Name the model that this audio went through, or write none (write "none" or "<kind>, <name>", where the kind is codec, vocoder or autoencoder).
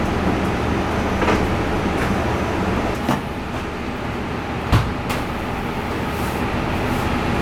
none